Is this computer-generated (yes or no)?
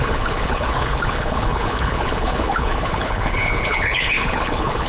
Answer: yes